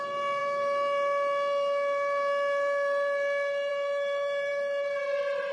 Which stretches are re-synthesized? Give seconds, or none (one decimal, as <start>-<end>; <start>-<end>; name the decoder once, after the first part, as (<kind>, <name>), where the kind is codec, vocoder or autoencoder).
none